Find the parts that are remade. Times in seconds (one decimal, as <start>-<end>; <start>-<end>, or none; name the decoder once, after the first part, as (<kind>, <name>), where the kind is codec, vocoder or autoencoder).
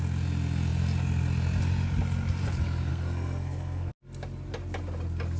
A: 2.9-3.9 (codec, SNAC)